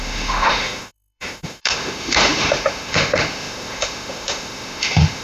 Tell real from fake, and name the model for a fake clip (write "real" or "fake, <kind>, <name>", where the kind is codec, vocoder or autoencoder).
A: fake, autoencoder, DAC-VAE